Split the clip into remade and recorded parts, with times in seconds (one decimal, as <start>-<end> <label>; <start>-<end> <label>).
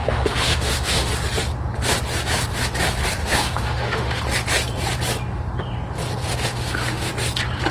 0.0-1.1 remade; 1.1-3.2 recorded; 3.2-4.2 remade; 4.2-6.3 recorded; 6.3-7.1 remade; 7.1-7.7 recorded